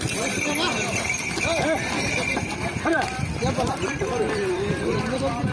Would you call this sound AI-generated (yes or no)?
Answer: yes